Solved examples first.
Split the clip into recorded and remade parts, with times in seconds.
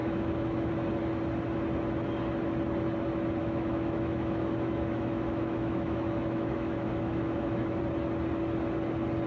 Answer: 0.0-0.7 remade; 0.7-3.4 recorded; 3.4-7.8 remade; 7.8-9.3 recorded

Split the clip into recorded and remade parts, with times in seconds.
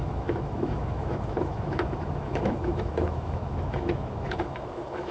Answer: 0.0-5.1 remade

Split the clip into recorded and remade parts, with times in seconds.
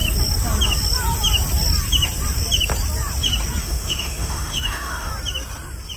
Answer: 0.0-3.6 recorded; 3.6-5.1 remade; 5.1-6.0 recorded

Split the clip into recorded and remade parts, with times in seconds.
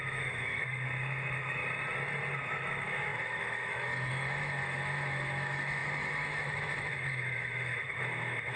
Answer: 0.0-1.6 remade; 1.6-2.3 recorded; 2.3-8.6 remade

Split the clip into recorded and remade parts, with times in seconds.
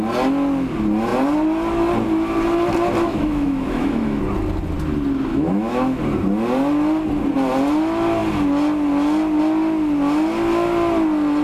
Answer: 0.0-3.1 recorded; 3.1-4.2 remade; 4.2-5.3 recorded; 5.3-6.0 remade; 6.0-11.4 recorded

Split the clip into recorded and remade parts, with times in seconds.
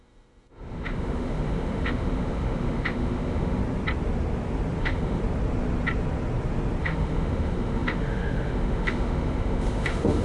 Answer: 0.0-3.6 remade; 3.6-4.8 recorded; 4.8-5.2 remade; 5.2-6.8 recorded; 6.8-10.2 remade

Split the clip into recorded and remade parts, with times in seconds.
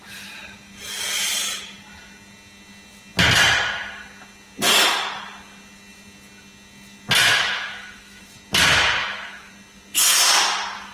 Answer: 0.0-7.2 recorded; 7.2-8.2 remade; 8.2-9.0 recorded; 9.0-9.5 remade; 9.5-10.9 recorded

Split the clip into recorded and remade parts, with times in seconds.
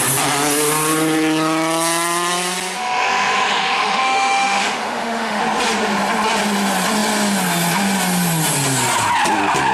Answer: 0.0-2.8 recorded; 2.8-5.4 remade; 5.4-9.7 recorded